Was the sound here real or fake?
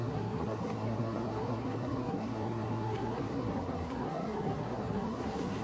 fake